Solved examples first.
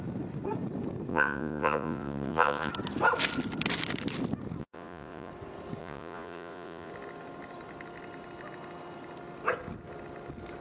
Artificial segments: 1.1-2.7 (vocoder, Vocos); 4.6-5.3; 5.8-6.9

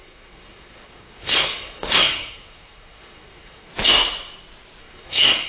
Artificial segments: 0.0-3.7 (codec, SNAC); 4.8-5.5

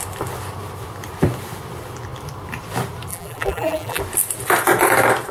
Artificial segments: 3.1-4.0 (vocoder, BigVGAN v2)

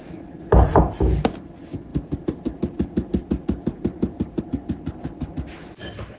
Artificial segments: none

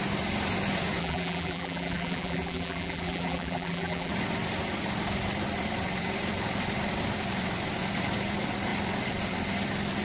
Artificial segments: 1.0-4.1 (vocoder, BigVGAN v2)

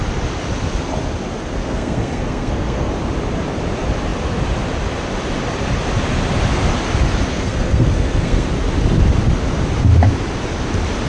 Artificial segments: 1.6-2.9 (codec, SNAC); 7.3-8.5

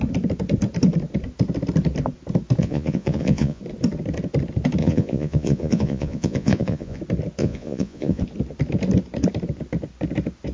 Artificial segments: 2.6-3.6 (vocoder, Vocos); 4.8-7.0; 7.4-8.2